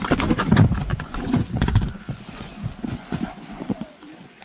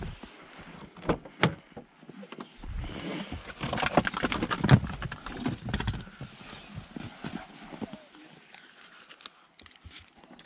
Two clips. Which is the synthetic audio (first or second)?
first